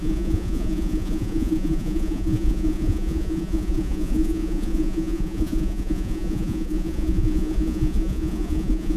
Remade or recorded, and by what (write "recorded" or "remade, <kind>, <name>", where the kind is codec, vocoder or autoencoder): remade, vocoder, Vocos